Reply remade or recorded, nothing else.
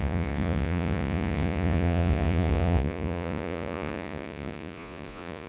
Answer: remade